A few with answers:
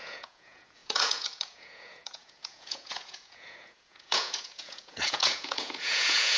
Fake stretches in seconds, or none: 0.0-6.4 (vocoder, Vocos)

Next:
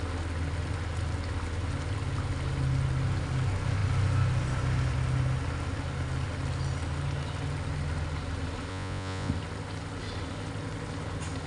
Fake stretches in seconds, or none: 8.7-9.3 (vocoder, Vocos)

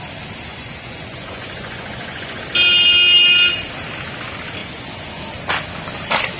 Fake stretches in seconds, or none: 0.5-2.4 (vocoder, Vocos); 4.6-5.2

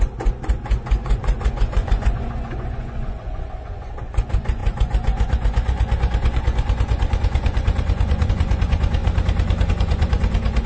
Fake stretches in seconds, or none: 0.0-9.0 (vocoder, Vocos); 9.7-10.7

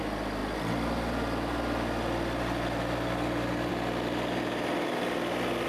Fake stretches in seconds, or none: none